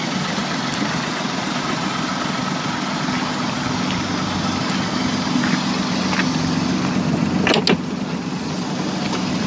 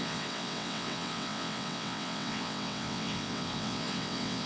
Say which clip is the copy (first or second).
second